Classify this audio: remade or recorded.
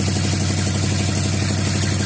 recorded